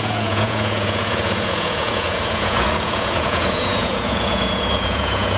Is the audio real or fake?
fake